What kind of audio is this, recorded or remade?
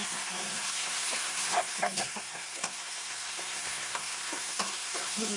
remade